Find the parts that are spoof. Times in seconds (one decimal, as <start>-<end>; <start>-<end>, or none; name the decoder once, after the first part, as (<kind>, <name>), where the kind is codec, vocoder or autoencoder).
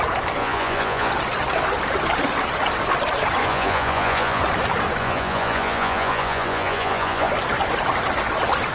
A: 0.4-1.1 (vocoder, Vocos); 3.4-4.4; 5.0-7.3